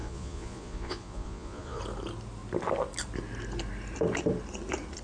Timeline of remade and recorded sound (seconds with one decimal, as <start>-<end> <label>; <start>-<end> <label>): 0.0-1.8 remade; 1.8-5.0 recorded